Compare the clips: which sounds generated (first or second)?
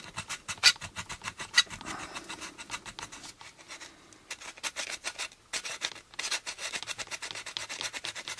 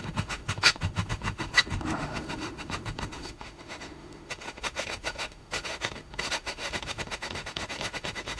second